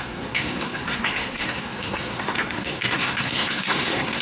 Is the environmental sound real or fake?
fake